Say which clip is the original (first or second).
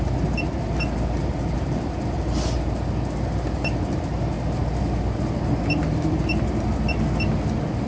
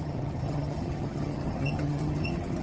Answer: first